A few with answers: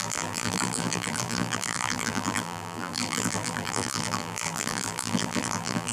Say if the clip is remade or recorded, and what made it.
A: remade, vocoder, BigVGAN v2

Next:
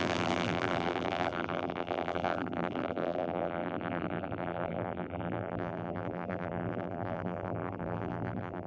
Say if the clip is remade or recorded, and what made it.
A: remade, vocoder, BigVGAN v2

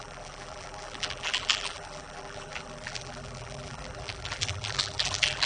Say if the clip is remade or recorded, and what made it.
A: remade, vocoder, BigVGAN v2